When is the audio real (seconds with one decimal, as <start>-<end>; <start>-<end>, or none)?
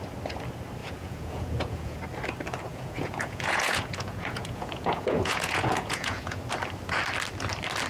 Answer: 0.0-0.8; 2.0-2.7; 6.4-7.9